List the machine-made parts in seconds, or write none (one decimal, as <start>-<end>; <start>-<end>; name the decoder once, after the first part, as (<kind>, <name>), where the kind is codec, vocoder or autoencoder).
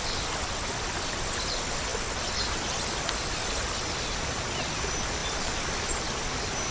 5.2-5.9 (vocoder, BigVGAN v2)